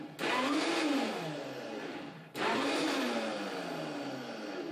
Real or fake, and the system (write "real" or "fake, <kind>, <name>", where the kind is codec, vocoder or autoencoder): real